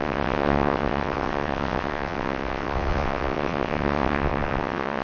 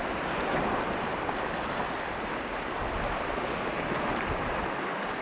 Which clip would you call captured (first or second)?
second